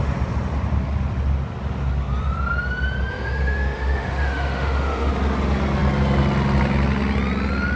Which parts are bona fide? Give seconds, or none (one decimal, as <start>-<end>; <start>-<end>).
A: 0.0-3.1; 5.1-7.8